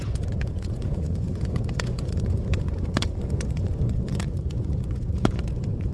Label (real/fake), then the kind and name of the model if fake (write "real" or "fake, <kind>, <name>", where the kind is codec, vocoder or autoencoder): fake, vocoder, Vocos